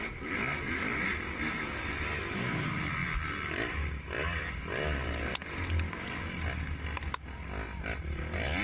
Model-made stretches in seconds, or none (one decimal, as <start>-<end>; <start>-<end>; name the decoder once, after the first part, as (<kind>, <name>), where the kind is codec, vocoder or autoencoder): none

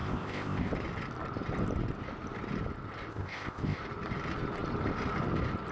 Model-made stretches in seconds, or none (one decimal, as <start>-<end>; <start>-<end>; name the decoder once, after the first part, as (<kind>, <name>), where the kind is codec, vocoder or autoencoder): 0.0-0.7 (codec, ZipCodec); 3.1-3.8

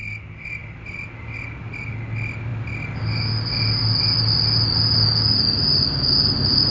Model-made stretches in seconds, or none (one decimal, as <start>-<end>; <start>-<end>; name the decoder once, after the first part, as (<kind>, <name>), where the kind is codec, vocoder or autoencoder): none

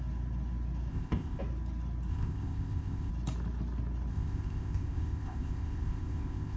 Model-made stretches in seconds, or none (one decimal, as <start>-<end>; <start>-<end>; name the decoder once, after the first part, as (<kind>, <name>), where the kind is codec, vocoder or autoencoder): 0.9-1.4 (codec, ZipCodec); 2.1-3.1; 4.1-6.6

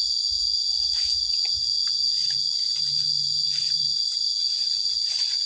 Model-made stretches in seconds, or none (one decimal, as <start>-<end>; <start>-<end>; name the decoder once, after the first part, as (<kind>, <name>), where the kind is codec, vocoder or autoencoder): none

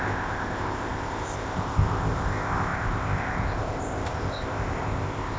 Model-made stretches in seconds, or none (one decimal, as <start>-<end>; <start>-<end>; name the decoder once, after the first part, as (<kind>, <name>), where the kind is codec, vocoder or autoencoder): 0.0-5.4 (codec, ZipCodec)

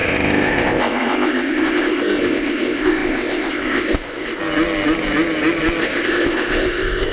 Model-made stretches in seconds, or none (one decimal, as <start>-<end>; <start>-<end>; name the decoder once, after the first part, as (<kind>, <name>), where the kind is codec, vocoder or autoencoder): 0.0-4.4 (codec, ZipCodec); 5.8-7.1

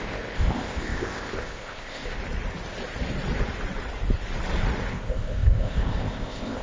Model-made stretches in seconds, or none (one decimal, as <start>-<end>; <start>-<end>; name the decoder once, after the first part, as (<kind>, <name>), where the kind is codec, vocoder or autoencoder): 0.0-2.2 (codec, ZipCodec); 4.9-6.6